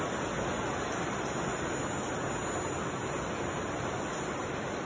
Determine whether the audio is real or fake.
real